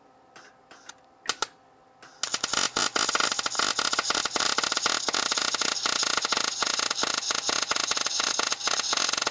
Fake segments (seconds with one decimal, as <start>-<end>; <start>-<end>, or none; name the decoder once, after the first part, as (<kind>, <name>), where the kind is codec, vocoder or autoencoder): none